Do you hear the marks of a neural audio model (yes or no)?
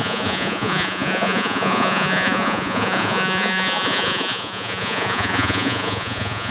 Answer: yes